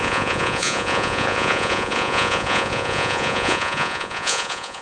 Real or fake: fake